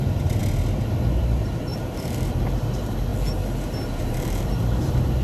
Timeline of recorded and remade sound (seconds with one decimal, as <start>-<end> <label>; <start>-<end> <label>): 0.0-0.4 remade; 0.4-1.2 recorded; 1.2-3.1 remade; 3.1-4.0 recorded; 4.0-5.2 remade

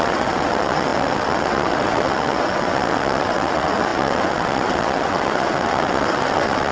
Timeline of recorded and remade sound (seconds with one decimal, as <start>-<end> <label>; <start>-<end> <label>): 0.0-6.7 remade

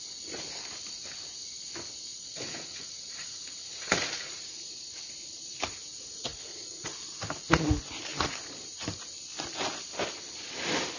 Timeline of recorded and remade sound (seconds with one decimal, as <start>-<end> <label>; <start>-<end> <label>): 0.0-2.1 recorded; 2.1-4.4 remade; 4.4-6.3 recorded; 6.3-6.9 remade; 6.9-11.0 recorded

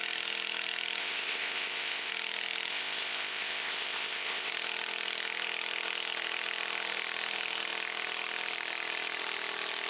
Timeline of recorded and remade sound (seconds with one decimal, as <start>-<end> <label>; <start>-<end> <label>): 0.0-1.0 recorded; 1.0-2.1 remade; 2.1-2.7 recorded; 2.7-4.5 remade; 4.5-9.9 recorded

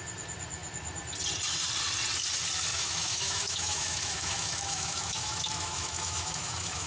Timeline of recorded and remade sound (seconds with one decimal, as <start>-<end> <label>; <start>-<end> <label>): 0.0-2.7 recorded; 2.7-6.9 remade

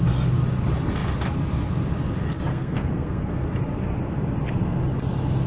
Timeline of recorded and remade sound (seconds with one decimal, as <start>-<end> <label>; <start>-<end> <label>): 0.0-2.5 recorded; 2.5-3.3 remade; 3.3-5.5 recorded

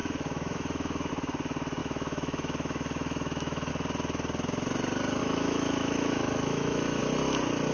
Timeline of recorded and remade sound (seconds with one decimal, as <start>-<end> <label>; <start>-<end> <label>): 0.0-1.1 remade; 1.1-1.8 recorded; 1.8-3.7 remade; 3.7-5.2 recorded; 5.2-7.0 remade; 7.0-7.7 recorded